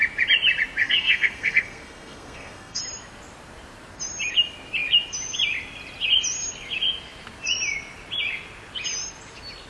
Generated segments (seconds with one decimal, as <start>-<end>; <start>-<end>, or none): 0.8-2.8